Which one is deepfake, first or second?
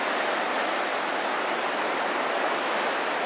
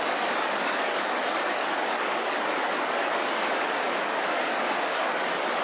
second